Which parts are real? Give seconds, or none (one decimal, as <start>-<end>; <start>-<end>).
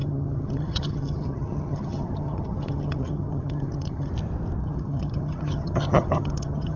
4.1-4.6